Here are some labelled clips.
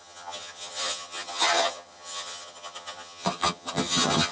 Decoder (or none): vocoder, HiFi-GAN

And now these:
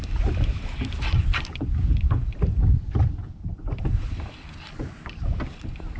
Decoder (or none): none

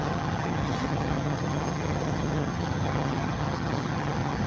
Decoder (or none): vocoder, HiFi-GAN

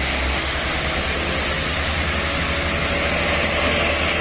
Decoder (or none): none